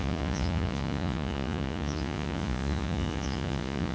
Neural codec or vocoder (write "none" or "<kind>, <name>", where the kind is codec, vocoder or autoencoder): vocoder, Vocos